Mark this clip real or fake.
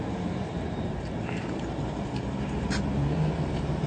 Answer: fake